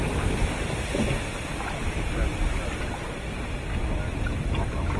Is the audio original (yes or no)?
yes